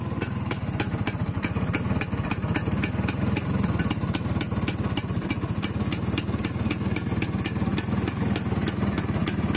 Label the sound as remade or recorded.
recorded